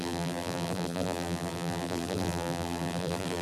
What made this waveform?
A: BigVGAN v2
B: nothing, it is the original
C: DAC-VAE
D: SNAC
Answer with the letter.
A